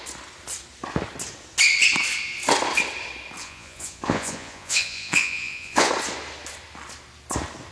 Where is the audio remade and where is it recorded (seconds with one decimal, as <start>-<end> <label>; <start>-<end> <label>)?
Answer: 0.0-3.4 recorded; 3.4-5.9 remade; 5.9-7.7 recorded